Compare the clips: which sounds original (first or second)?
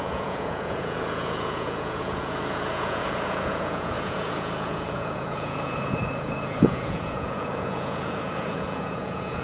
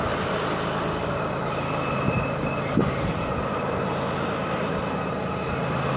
second